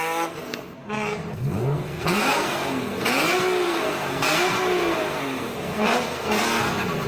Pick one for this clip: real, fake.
fake